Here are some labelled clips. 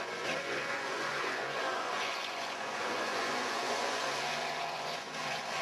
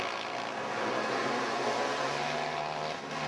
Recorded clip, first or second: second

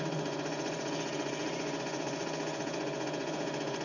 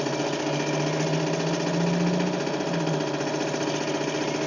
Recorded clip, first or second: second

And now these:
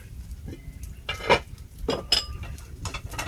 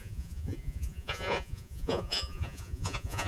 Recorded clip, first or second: first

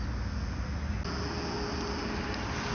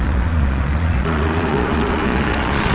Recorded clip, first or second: first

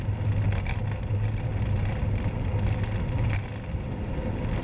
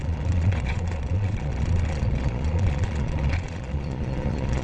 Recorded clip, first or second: first